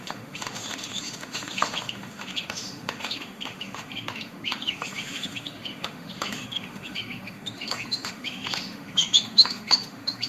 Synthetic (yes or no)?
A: yes